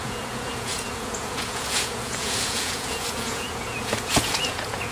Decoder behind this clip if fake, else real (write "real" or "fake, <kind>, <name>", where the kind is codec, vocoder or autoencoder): fake, vocoder, Vocos